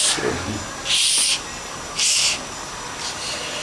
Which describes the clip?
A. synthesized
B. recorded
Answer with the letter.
B